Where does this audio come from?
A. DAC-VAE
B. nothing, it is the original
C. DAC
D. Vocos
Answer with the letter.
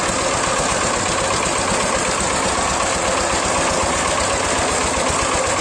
B